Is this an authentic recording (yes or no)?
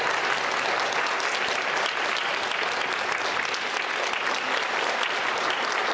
yes